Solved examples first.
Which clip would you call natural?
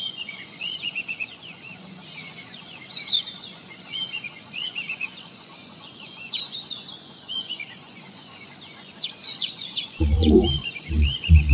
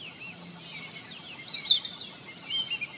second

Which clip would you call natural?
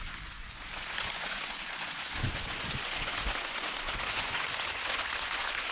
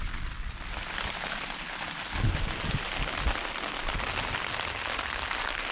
second